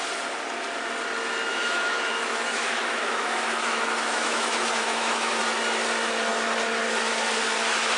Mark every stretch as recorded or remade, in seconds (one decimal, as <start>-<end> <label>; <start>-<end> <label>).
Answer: 0.0-1.5 recorded; 1.5-5.4 remade; 5.4-8.0 recorded